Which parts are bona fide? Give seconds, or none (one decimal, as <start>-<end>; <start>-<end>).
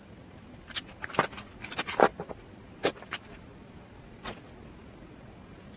0.0-5.8